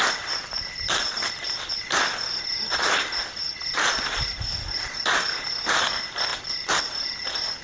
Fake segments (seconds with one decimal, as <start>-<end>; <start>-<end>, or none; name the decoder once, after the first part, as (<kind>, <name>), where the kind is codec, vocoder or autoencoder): none